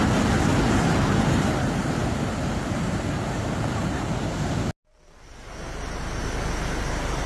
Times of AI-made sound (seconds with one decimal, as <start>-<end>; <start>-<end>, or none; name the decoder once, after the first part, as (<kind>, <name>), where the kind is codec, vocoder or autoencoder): none